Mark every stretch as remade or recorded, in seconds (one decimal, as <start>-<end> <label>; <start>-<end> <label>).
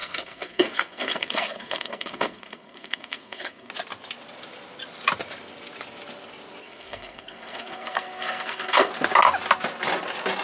0.0-3.7 remade; 3.7-6.6 recorded; 6.6-8.9 remade; 8.9-10.4 recorded